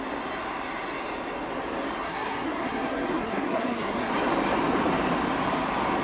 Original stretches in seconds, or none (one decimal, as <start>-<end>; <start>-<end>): 0.0-2.0; 4.1-6.0